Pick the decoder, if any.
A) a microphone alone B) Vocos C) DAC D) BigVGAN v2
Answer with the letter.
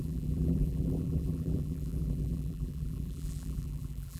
D